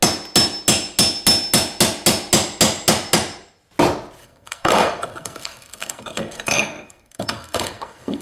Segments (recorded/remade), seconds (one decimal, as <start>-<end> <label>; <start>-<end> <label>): 0.0-4.2 recorded; 4.2-8.2 remade